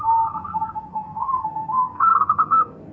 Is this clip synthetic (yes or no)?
yes